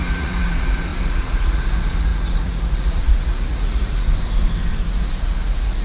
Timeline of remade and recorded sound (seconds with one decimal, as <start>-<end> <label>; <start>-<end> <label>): 0.0-4.1 remade; 4.1-4.8 recorded; 4.8-5.8 remade